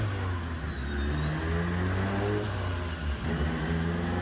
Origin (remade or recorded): recorded